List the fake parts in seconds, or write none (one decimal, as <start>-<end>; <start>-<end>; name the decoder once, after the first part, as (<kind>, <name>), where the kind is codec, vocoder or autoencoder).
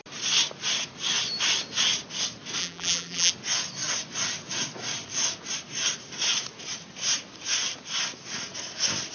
2.6-3.3 (vocoder, BigVGAN v2)